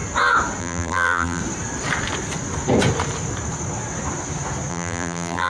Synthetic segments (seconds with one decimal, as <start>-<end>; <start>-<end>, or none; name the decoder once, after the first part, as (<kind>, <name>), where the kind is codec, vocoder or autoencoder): 0.6-1.4 (vocoder, BigVGAN v2); 4.7-5.5